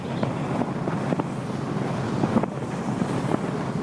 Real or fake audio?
real